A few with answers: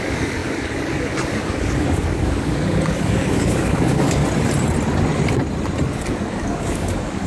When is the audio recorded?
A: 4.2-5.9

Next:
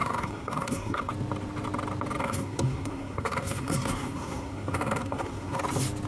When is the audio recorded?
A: 1.1-2.2; 5.6-6.1